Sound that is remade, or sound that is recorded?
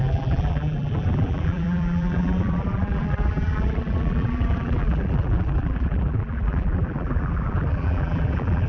remade